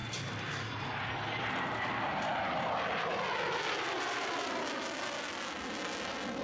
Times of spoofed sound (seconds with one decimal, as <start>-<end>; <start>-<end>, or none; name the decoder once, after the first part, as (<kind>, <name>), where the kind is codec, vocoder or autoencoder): none